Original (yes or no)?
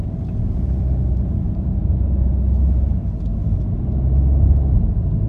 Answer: yes